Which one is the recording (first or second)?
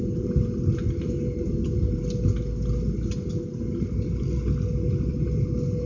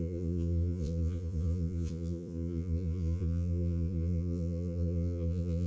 first